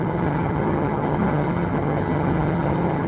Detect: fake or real fake